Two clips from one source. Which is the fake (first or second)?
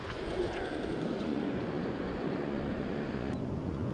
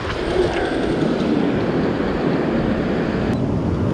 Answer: first